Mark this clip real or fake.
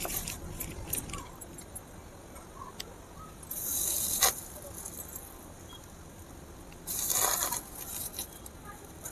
real